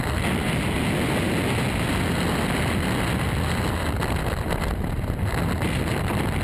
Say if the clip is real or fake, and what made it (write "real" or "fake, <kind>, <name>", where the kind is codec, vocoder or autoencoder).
real